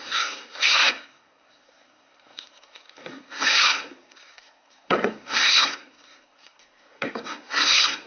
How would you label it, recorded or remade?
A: remade